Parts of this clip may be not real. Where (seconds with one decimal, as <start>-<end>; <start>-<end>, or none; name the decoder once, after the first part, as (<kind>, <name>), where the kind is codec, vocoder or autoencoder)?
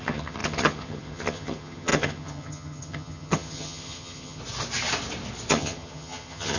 0.0-4.4 (vocoder, HiFi-GAN); 5.5-6.6